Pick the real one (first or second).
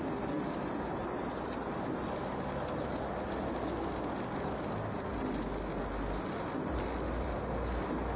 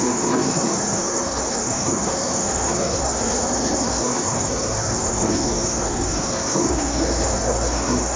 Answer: first